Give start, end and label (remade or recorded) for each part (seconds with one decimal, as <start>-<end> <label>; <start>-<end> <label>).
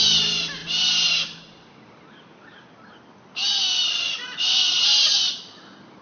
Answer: 0.0-0.6 remade; 0.6-4.2 recorded; 4.2-6.0 remade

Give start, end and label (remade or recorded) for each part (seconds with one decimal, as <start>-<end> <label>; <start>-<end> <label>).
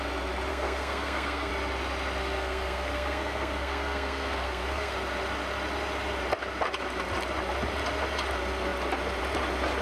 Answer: 0.0-0.5 recorded; 0.5-1.5 remade; 1.5-2.2 recorded; 2.2-4.9 remade; 4.9-9.8 recorded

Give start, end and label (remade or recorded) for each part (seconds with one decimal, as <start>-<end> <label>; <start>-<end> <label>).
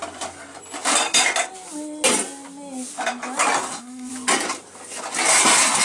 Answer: 0.0-3.6 recorded; 3.6-4.1 remade; 4.1-5.8 recorded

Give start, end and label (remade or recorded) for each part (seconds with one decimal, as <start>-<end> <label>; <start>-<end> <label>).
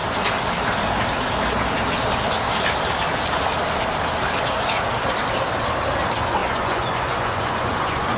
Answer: 0.0-6.4 recorded; 6.4-8.2 remade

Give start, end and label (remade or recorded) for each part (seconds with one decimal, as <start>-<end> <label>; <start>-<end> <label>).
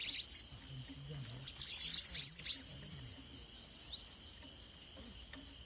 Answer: 0.0-1.9 recorded; 1.9-5.3 remade; 5.3-5.7 recorded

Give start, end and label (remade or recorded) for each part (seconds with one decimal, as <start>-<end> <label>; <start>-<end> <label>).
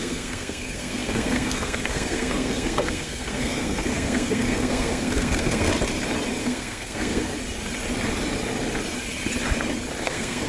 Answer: 0.0-5.7 remade; 5.7-6.4 recorded; 6.4-7.3 remade; 7.3-10.0 recorded; 10.0-10.5 remade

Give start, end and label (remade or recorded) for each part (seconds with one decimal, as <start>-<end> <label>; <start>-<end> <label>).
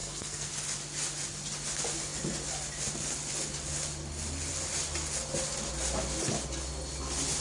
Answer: 0.0-0.5 remade; 0.5-7.4 recorded